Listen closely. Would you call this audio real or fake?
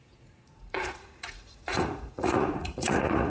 fake